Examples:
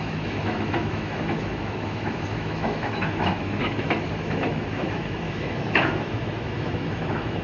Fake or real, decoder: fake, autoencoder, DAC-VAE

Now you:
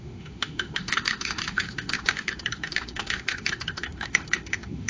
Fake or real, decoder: fake, autoencoder, DAC-VAE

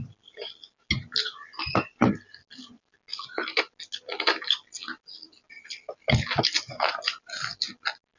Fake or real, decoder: real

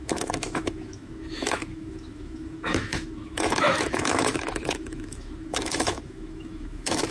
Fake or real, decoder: fake, autoencoder, DAC-VAE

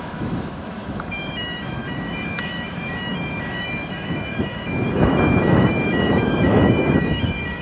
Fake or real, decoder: fake, autoencoder, DAC-VAE